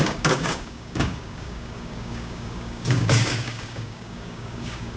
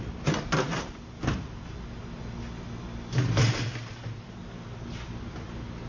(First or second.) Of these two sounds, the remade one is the first